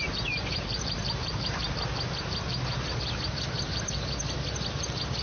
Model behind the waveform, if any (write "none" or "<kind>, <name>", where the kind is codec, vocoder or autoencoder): none